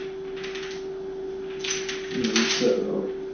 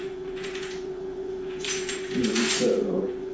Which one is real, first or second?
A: first